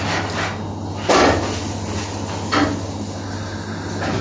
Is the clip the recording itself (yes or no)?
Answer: yes